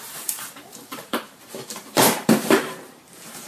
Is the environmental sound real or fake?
fake